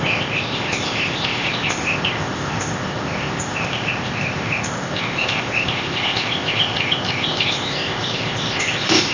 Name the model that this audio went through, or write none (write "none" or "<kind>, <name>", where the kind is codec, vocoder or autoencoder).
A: codec, ZipCodec